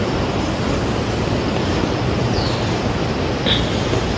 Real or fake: real